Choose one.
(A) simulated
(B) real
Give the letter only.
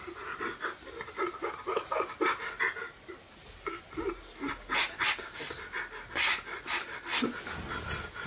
B